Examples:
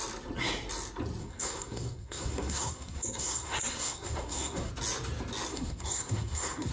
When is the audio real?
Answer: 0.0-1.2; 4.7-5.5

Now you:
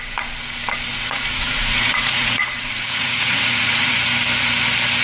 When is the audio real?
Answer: 0.0-0.9; 3.9-5.0

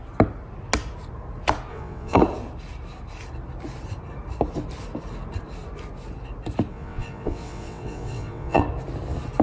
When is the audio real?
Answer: 0.0-1.7; 2.2-6.7; 8.6-9.4

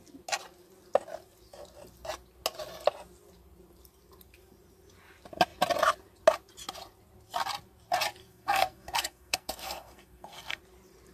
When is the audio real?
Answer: 0.0-8.2; 10.6-11.1

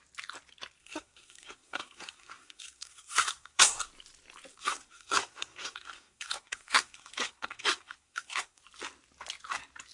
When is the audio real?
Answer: 0.0-0.8; 3.9-4.5; 8.6-9.9

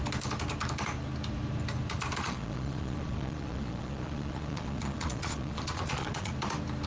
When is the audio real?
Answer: 0.0-2.2; 6.3-6.9

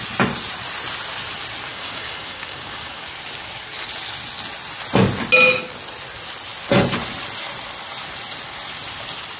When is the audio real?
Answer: 0.0-1.7; 3.0-9.4

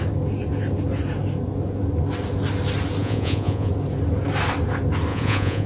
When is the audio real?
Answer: 0.0-3.0; 3.7-5.1